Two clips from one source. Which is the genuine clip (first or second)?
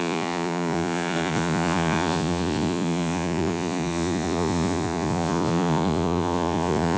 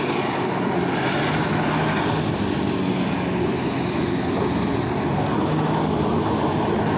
second